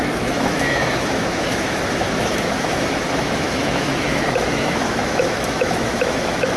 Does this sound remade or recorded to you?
remade